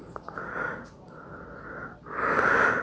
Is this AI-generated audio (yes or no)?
no